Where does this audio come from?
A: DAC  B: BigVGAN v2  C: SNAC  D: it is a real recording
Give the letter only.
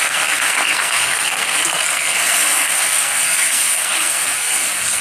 C